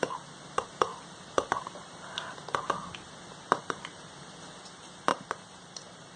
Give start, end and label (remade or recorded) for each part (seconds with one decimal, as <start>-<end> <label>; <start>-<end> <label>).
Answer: 0.0-0.9 recorded; 0.9-2.0 remade; 2.0-5.1 recorded; 5.1-6.2 remade